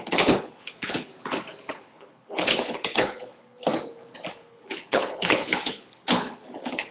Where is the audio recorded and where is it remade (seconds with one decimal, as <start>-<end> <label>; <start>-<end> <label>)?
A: 0.0-1.1 remade; 1.1-1.7 recorded; 1.7-3.7 remade; 3.7-4.3 recorded; 4.3-6.9 remade